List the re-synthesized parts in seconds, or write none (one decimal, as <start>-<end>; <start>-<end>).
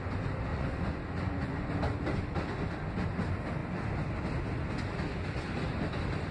0.5-1.7